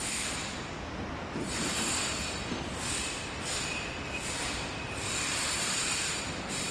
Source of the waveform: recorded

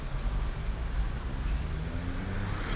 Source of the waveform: recorded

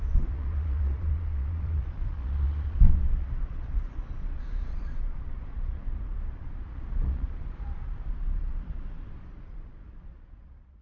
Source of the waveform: remade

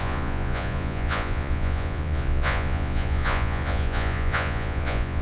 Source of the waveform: remade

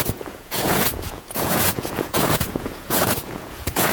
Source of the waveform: remade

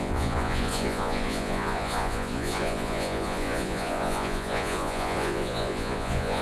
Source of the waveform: remade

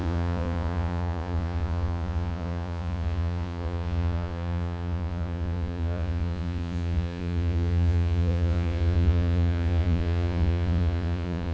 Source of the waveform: remade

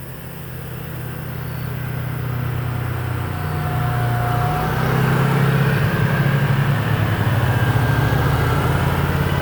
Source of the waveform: recorded